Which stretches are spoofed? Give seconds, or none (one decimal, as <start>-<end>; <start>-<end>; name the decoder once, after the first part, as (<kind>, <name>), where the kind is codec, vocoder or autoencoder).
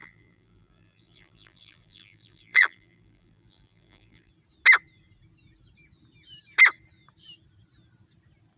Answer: 0.0-4.3 (vocoder, BigVGAN v2)